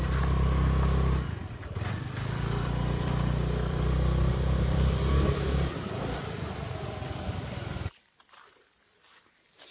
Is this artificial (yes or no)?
yes